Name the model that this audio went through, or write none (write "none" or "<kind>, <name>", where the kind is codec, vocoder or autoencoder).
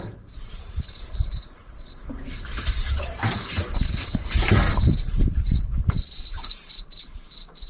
vocoder, BigVGAN v2